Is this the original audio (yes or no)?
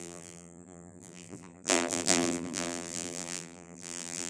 no